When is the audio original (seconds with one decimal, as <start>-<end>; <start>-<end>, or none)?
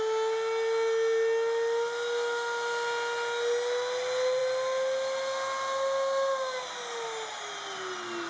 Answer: 0.0-8.3